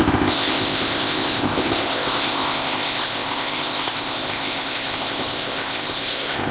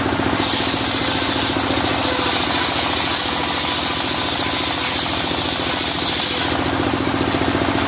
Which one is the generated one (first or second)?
first